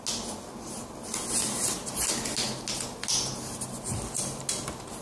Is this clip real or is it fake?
real